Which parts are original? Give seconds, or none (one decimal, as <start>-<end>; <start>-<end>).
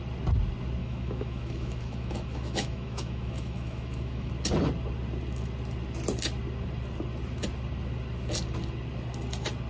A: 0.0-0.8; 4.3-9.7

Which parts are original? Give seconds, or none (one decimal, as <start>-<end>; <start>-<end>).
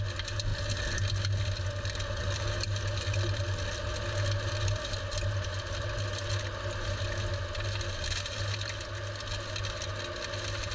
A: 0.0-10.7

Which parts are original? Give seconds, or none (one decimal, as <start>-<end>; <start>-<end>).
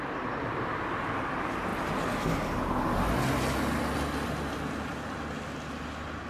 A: 0.0-6.3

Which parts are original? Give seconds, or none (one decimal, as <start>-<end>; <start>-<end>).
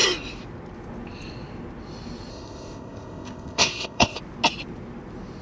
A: 0.0-2.3; 4.2-5.4